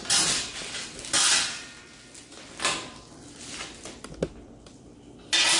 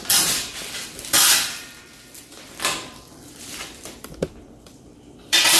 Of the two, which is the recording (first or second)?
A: first